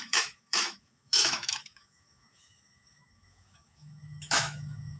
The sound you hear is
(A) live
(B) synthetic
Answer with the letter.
B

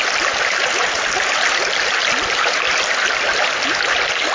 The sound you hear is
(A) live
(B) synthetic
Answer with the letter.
A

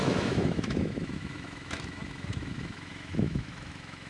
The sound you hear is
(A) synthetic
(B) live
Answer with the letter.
A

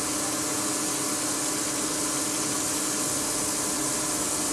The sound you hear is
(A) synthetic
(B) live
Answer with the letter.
B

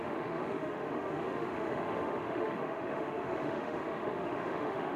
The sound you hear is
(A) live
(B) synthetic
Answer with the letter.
B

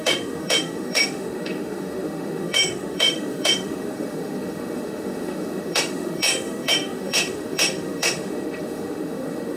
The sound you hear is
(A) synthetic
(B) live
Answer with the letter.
A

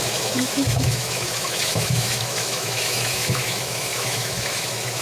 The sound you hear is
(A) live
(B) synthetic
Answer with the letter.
B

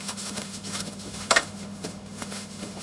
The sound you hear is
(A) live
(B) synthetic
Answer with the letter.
B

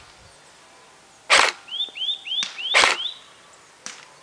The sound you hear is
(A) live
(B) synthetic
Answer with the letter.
A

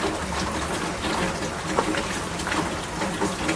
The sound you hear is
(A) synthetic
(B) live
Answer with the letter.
B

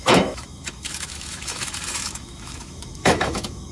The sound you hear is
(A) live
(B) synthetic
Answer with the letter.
B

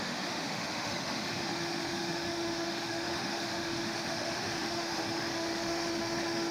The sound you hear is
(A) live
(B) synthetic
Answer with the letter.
B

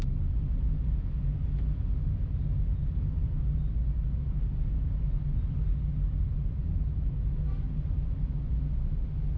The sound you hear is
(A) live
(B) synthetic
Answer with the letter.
A